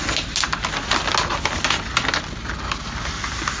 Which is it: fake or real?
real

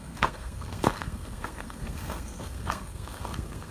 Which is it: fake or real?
fake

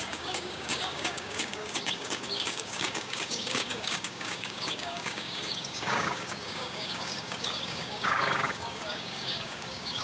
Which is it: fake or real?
fake